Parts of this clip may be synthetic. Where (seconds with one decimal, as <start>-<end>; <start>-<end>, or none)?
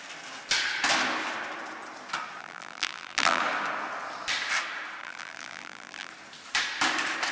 2.4-3.4; 5.0-6.1